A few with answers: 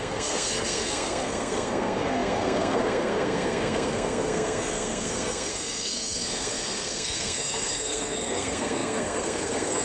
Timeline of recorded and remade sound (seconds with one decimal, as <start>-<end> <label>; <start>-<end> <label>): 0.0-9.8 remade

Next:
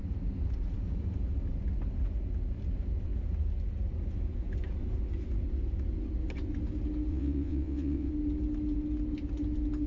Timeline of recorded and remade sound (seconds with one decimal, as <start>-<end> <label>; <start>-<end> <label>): 0.0-7.1 recorded; 7.1-8.1 remade; 8.1-9.9 recorded

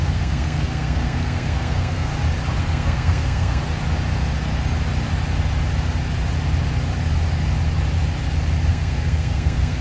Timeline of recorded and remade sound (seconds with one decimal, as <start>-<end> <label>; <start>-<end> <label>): 0.0-2.1 remade; 2.1-2.6 recorded; 2.6-3.6 remade; 3.6-8.7 recorded; 8.7-9.8 remade

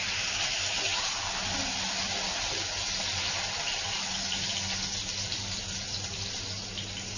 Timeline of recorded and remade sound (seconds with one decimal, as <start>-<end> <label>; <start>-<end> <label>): 0.0-7.2 recorded

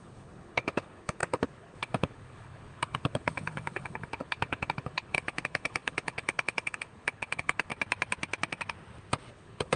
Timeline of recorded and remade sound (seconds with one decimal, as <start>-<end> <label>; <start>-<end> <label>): 0.0-7.7 remade; 7.7-9.3 recorded; 9.3-9.8 remade

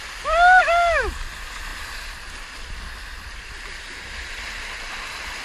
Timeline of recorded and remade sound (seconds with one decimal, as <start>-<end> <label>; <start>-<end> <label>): 0.0-5.4 recorded

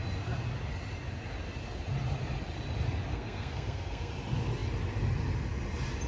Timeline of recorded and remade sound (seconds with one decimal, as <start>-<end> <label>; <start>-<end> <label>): 0.0-3.1 recorded; 3.1-4.1 remade; 4.1-6.1 recorded

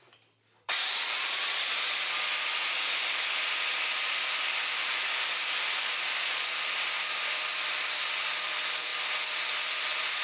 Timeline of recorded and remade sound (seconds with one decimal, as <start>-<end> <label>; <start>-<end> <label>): 0.0-10.2 remade